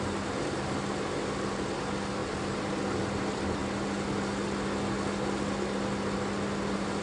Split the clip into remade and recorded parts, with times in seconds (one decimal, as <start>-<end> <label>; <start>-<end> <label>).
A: 0.0-7.0 recorded